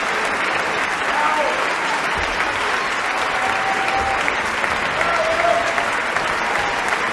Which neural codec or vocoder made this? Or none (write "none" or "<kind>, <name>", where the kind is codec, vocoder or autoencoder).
none